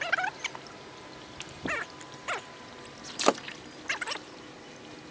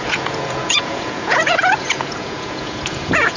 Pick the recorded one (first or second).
first